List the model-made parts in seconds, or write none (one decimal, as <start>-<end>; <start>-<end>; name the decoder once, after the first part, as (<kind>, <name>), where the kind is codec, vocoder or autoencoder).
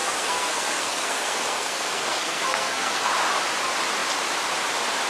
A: 0.0-3.1 (codec, SNAC)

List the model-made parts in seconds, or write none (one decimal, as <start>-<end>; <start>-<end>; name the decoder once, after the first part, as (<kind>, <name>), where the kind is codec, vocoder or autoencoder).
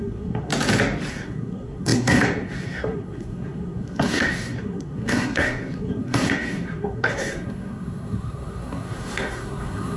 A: 0.0-0.5 (codec, SNAC); 1.1-10.0